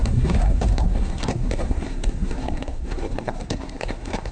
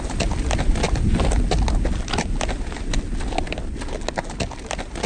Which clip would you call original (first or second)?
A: second